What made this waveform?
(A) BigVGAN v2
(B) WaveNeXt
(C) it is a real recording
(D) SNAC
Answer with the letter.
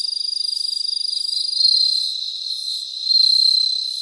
C